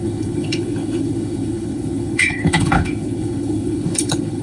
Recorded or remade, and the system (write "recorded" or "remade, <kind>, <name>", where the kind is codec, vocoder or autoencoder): remade, codec, HILCodec